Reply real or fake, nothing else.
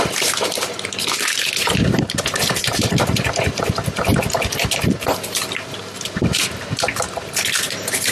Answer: real